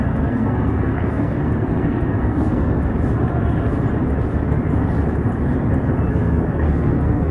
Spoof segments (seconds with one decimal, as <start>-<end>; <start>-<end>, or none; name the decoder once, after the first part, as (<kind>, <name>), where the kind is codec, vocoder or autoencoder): 0.0-2.9 (codec, SNAC); 6.1-7.3